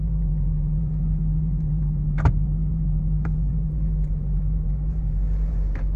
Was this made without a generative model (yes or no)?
no